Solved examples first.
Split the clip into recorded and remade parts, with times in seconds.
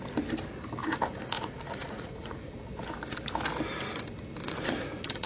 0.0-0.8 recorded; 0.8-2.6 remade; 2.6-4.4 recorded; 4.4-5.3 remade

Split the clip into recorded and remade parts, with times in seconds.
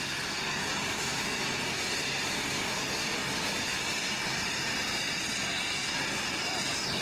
0.0-7.0 recorded